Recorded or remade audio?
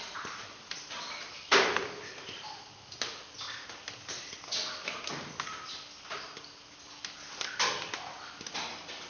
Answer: recorded